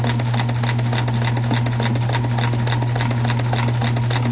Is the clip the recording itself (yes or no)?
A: yes